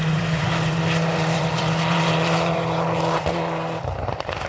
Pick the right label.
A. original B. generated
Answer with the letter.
B